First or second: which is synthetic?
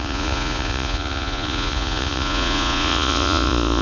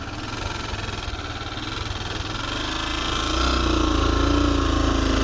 first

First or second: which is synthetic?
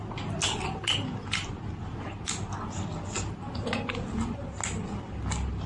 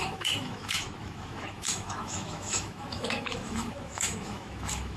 second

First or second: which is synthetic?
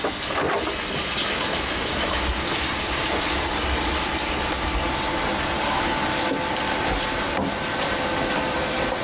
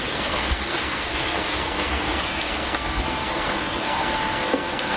second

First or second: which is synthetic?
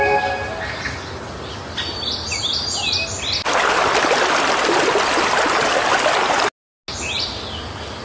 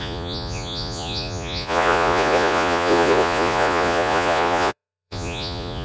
second